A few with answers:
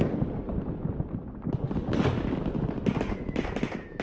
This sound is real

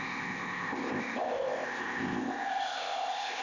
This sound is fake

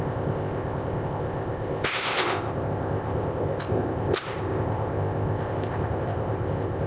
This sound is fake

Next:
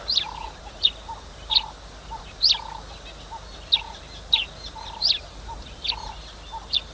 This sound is real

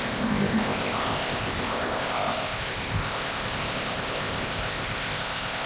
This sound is fake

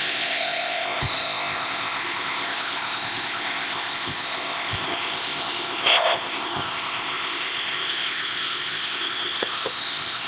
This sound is fake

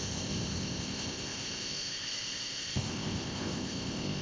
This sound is fake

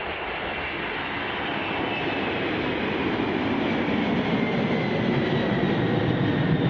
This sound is real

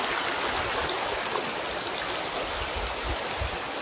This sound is real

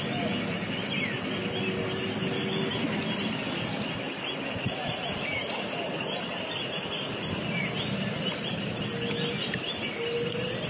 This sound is real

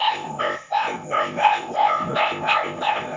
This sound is fake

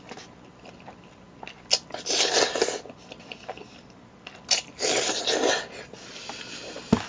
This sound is real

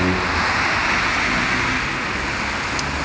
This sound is real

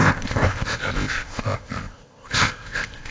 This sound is fake